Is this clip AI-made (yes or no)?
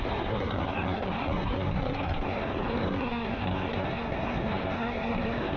yes